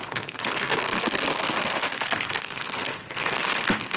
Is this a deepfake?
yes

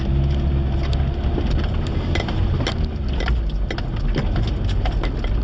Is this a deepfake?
no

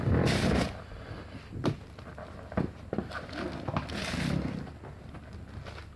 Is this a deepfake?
no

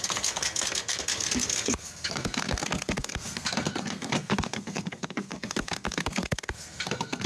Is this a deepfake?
yes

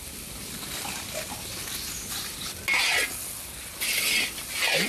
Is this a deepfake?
no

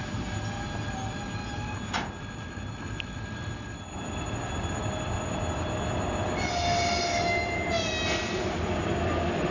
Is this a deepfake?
no